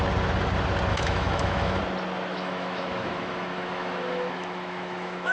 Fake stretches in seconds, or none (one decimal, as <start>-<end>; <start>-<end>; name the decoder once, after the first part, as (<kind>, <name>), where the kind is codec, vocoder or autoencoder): 0.9-1.8 (autoencoder, DAC-VAE); 2.3-5.3